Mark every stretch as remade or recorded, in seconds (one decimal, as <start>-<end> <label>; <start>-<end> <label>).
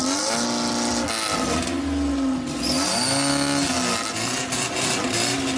0.0-5.6 recorded